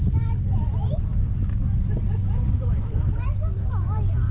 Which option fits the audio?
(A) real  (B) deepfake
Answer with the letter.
B